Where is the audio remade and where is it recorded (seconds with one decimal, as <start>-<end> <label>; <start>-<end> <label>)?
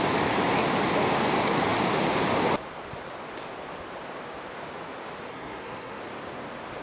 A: 0.0-5.3 recorded; 5.3-6.0 remade; 6.0-6.8 recorded